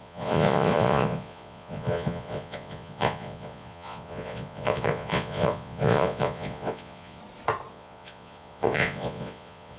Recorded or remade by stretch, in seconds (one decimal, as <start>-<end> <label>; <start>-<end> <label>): 0.0-7.2 remade; 7.2-7.7 recorded; 7.7-9.8 remade